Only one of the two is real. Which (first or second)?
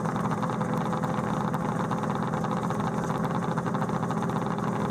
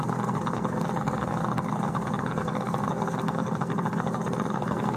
first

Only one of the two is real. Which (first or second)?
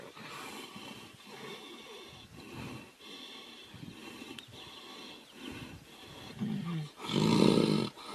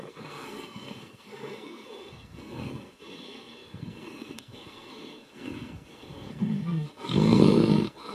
first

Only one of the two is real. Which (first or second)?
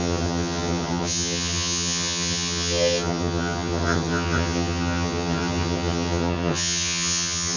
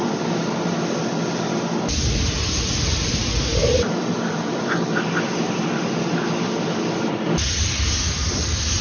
second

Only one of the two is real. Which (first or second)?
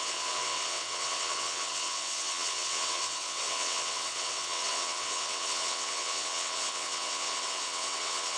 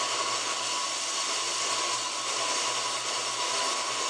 second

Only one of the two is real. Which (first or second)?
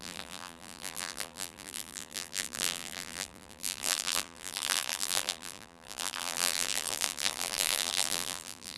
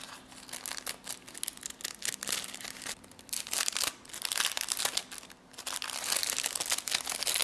second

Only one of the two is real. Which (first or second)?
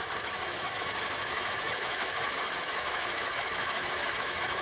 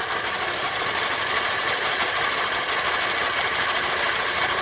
second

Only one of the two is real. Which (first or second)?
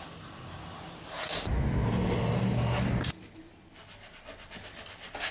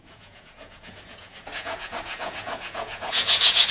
first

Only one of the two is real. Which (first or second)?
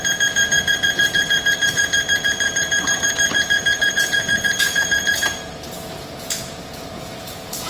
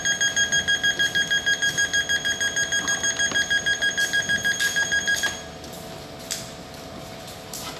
second